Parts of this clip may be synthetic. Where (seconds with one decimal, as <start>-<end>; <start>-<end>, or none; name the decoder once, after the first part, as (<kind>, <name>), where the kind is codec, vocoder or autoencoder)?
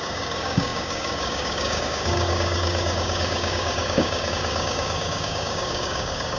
0.0-6.4 (codec, DAC)